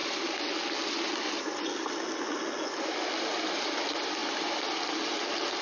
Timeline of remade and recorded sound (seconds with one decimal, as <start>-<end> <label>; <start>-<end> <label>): 0.0-5.6 recorded